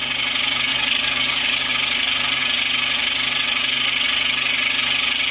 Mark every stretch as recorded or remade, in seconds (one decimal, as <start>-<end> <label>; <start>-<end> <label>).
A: 0.0-0.7 recorded; 0.7-1.7 remade; 1.7-5.3 recorded